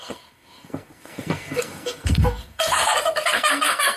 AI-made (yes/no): yes